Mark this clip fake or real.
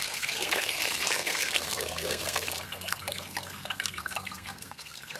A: fake